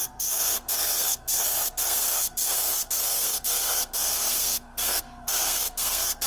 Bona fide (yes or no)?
no